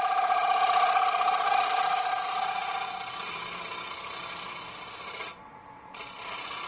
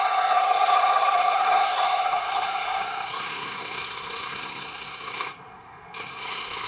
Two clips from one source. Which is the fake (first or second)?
second